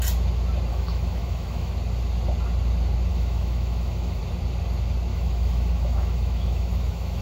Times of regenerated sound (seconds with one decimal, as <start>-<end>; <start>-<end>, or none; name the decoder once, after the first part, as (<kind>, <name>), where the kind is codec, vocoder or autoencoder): 0.7-1.7 (autoencoder, DAC-VAE); 3.1-4.2; 5.1-7.2